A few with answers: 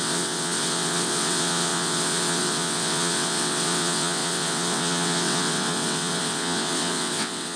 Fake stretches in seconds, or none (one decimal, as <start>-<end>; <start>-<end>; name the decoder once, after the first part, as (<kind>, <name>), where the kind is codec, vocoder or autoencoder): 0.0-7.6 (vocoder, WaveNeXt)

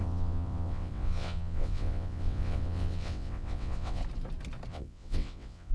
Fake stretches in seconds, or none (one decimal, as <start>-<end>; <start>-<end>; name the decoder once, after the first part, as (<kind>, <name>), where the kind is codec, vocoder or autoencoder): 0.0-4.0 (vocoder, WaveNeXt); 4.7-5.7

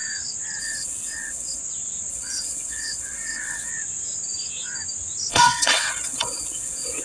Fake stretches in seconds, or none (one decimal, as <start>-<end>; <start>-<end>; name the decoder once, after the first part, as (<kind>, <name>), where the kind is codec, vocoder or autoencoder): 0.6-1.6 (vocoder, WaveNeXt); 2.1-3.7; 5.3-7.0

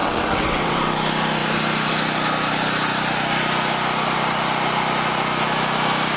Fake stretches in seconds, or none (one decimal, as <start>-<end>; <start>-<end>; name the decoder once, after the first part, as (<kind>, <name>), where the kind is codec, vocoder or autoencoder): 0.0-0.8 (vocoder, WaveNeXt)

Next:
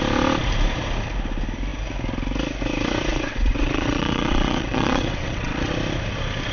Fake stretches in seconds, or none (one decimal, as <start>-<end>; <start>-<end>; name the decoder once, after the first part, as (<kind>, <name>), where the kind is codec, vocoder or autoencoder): 3.1-5.7 (vocoder, WaveNeXt)